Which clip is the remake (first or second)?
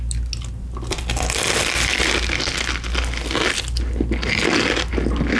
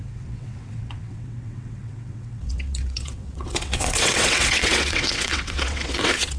second